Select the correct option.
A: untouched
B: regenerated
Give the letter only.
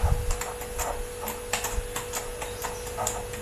A